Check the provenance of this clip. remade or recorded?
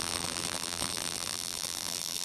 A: remade